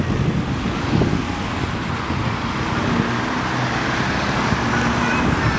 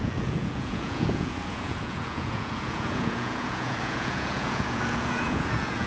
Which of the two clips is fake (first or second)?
second